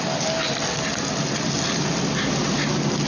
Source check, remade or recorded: recorded